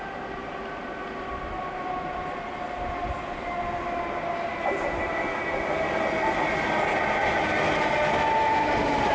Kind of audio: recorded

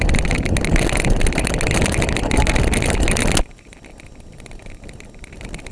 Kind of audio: recorded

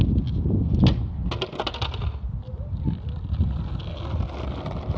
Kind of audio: recorded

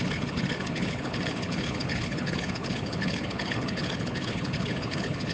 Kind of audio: remade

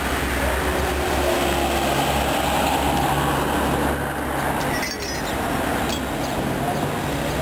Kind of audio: recorded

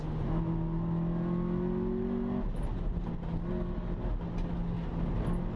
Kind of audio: recorded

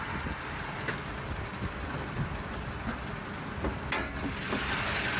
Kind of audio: recorded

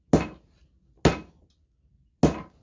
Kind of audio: recorded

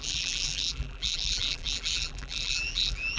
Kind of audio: remade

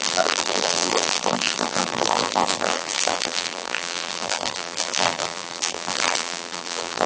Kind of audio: remade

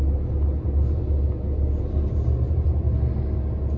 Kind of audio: recorded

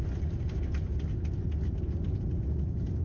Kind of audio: recorded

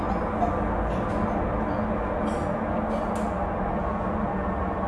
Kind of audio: recorded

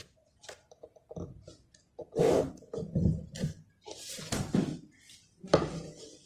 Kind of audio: recorded